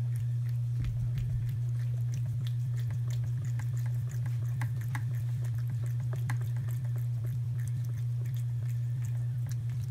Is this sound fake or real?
fake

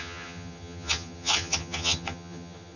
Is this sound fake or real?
fake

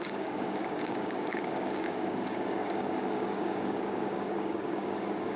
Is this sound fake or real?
fake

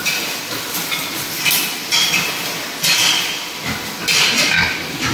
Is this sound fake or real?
real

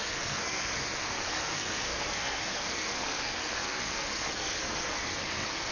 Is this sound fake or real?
fake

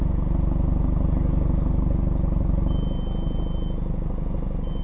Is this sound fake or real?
real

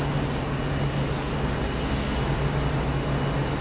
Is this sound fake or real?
real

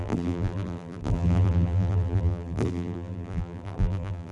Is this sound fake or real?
fake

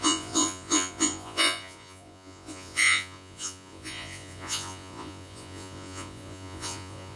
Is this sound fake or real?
fake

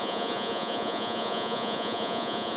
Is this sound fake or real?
fake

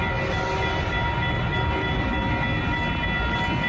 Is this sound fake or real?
real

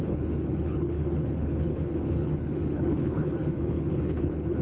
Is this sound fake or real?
fake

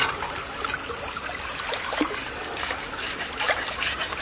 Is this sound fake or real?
real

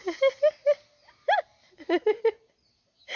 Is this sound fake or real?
real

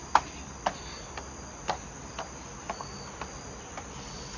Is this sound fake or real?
real